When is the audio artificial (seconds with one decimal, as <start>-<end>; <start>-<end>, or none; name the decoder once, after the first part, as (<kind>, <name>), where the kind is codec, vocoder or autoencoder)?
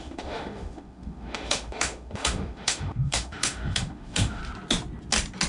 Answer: 0.0-4.4 (autoencoder, DAC-VAE)